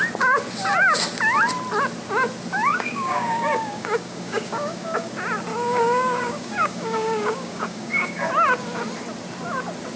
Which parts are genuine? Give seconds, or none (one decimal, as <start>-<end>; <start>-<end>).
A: 0.0-2.7; 5.1-5.5; 8.3-10.0